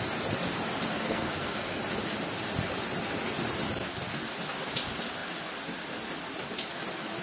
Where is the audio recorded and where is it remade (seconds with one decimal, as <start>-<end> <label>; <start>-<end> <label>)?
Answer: 0.0-0.9 recorded; 0.9-1.8 remade; 1.8-7.2 recorded